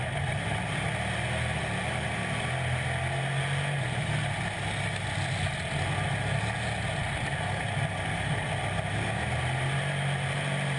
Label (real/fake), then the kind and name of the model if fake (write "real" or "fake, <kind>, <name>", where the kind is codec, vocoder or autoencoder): real